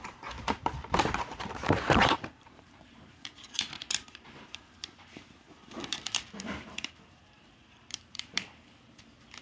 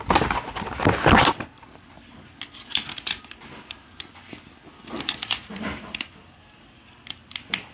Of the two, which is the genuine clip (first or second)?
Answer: second